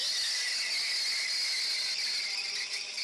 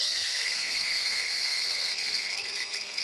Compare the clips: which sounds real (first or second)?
first